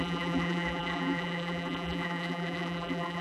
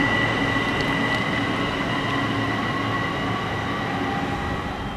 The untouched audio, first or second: second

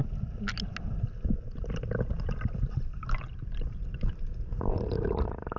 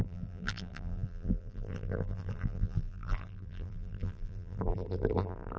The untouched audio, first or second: first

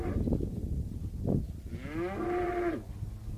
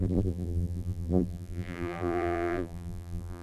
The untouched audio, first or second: first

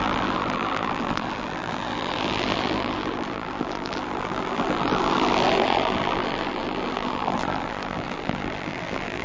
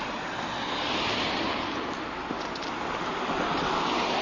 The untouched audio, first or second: second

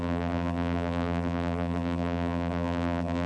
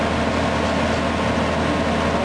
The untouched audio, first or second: second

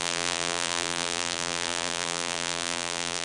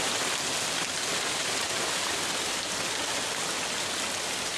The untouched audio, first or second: second